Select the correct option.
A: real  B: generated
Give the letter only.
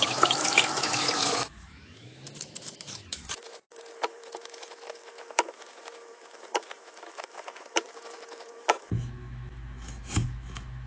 B